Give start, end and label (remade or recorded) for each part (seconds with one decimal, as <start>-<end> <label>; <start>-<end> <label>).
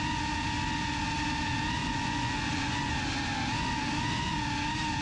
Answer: 0.0-1.8 recorded; 1.8-2.9 remade; 2.9-5.0 recorded